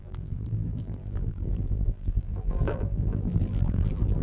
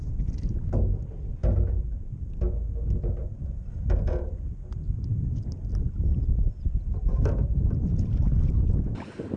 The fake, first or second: first